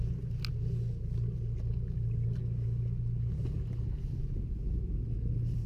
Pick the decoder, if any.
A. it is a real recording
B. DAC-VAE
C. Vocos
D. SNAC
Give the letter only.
A